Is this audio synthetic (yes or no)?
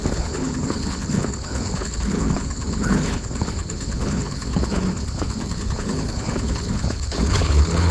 yes